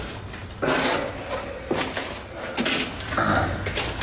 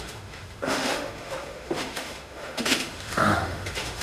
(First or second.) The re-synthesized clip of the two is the second